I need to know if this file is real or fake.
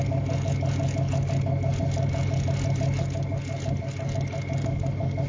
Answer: real